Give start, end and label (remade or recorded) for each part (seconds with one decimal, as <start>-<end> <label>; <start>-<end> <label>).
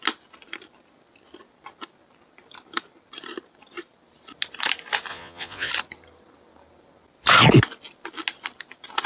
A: 0.0-5.1 recorded; 5.1-5.7 remade; 5.7-9.1 recorded